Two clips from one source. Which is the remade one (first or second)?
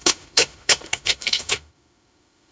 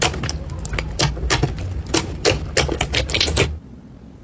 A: first